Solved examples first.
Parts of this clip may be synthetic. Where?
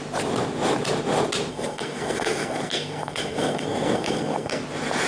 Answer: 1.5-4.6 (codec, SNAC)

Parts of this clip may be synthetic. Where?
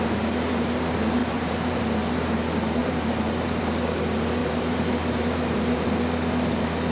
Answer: 1.2-1.8 (vocoder, BigVGAN v2); 2.8-3.6; 4.4-5.9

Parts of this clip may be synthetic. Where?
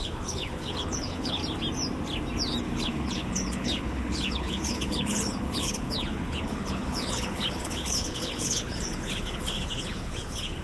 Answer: 0.0-1.4 (codec, HILCodec); 2.6-10.6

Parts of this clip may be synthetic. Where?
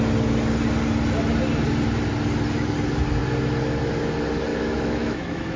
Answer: 4.5-5.6 (autoencoder, DAC-VAE)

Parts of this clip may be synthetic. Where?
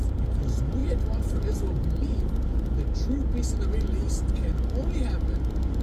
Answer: none